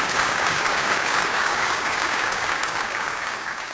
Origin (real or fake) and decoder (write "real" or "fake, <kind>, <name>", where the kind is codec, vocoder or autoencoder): fake, codec, DAC